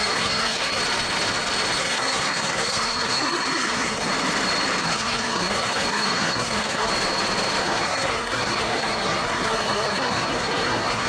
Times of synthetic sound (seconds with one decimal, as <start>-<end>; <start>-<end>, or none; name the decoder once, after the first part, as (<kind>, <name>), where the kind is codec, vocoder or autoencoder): 0.0-0.8 (codec, SNAC); 1.8-4.1; 4.8-6.9; 7.6-11.1